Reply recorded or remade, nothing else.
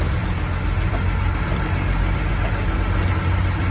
recorded